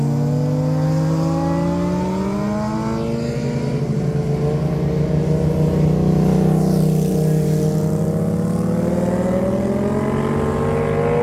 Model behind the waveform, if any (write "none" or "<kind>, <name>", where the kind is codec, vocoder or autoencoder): none